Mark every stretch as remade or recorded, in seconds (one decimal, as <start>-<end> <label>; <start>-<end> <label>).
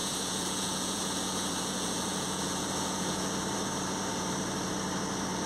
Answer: 0.0-3.3 remade; 3.3-5.5 recorded